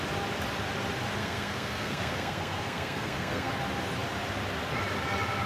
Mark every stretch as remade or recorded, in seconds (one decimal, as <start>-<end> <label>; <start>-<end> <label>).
0.0-1.2 recorded; 1.2-3.5 remade; 3.5-5.5 recorded